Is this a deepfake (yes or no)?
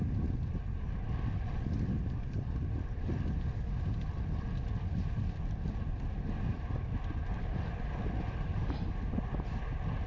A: no